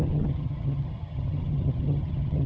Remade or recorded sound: remade